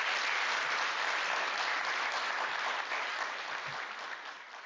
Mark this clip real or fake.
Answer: real